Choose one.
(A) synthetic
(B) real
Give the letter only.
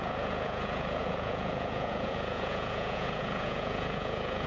A